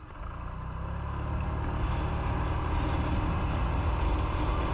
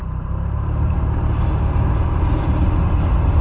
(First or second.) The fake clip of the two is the second